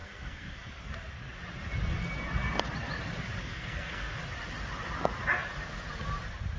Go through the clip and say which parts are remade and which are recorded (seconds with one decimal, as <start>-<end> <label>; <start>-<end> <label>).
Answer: 0.0-0.8 remade; 0.8-3.4 recorded; 3.4-4.2 remade; 4.2-6.6 recorded